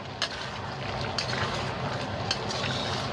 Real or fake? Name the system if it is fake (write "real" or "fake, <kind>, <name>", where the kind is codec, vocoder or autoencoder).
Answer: real